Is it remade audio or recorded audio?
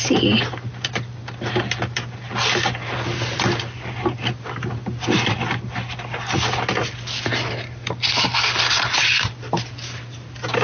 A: recorded